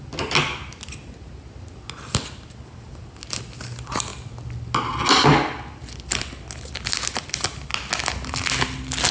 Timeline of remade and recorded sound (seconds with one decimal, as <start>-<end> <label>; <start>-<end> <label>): 0.0-9.1 recorded